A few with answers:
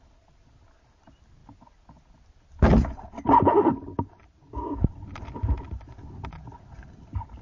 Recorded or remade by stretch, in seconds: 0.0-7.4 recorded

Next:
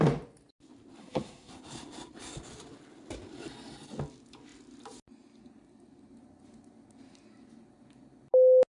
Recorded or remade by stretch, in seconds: 0.0-1.0 recorded; 1.0-1.5 remade; 1.5-8.8 recorded

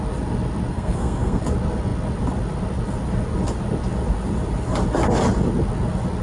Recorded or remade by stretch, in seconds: 0.0-0.7 recorded; 0.7-1.4 remade; 1.4-6.2 recorded

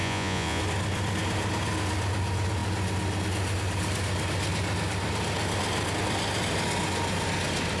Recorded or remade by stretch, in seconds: 0.0-0.6 remade; 0.6-7.8 recorded